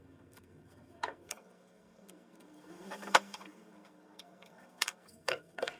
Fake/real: fake